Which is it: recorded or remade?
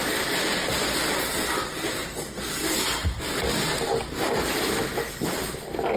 recorded